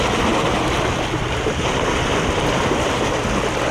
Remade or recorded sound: recorded